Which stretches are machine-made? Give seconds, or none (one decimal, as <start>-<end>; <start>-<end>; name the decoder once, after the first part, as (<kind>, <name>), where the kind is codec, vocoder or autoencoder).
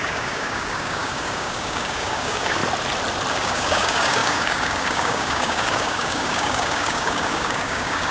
0.0-2.6 (codec, DAC); 3.3-8.1